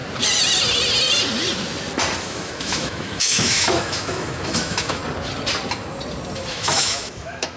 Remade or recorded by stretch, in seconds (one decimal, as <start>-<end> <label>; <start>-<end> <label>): 0.0-2.2 recorded; 2.2-5.0 remade; 5.0-6.5 recorded; 6.5-7.6 remade